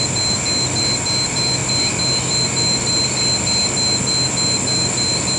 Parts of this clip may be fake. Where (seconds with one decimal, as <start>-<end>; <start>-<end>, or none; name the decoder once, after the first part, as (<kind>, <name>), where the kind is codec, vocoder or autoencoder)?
none